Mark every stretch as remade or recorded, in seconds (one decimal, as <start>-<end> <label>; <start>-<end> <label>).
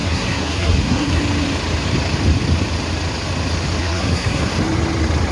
0.0-1.2 remade; 1.2-3.8 recorded; 3.8-4.5 remade; 4.5-5.3 recorded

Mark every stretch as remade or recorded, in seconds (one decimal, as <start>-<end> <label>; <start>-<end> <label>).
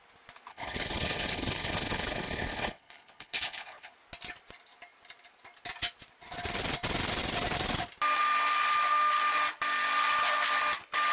0.0-0.5 recorded; 0.5-3.9 remade; 3.9-11.1 recorded